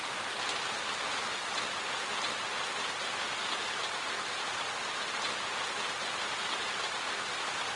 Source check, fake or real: real